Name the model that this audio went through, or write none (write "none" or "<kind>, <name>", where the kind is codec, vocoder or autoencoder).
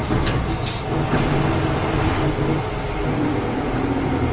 none